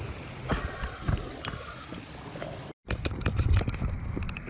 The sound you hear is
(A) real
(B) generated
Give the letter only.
A